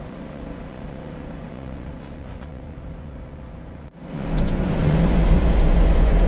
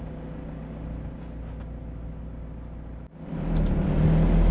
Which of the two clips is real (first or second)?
second